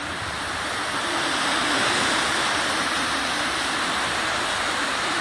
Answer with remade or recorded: remade